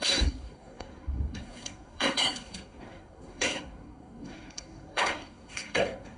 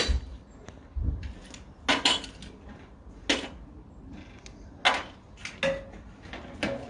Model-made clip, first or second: first